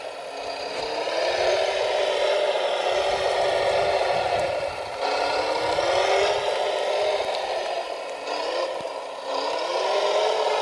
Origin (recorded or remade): recorded